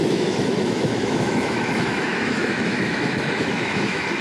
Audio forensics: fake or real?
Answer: fake